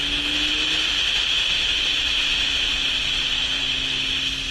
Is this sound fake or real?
real